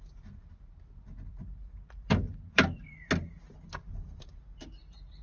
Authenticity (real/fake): real